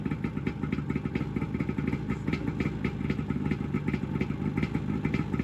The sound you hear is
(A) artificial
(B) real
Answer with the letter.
B